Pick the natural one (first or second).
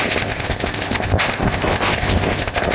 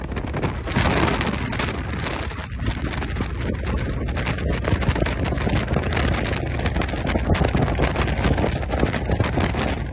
second